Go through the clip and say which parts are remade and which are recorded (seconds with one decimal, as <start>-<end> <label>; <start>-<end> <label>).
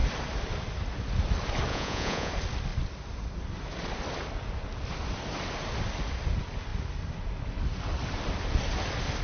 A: 0.0-1.7 recorded; 1.7-2.3 remade; 2.3-9.2 recorded